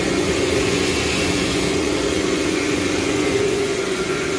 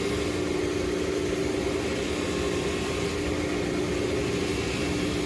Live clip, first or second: second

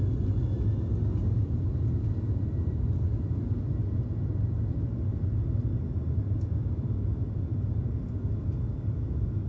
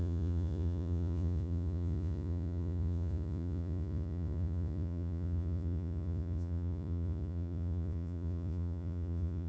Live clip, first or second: first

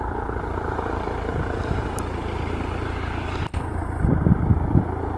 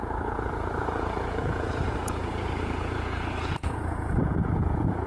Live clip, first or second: first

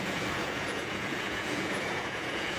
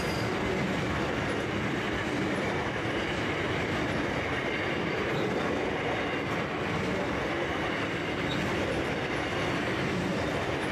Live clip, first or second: second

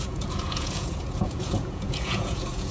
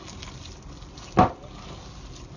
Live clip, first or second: second